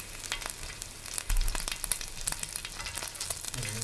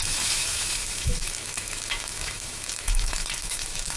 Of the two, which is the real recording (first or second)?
first